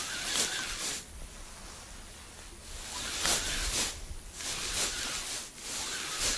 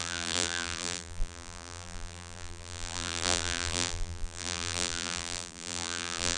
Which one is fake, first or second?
second